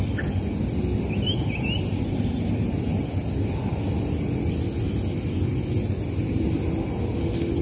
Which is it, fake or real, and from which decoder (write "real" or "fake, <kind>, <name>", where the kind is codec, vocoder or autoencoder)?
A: real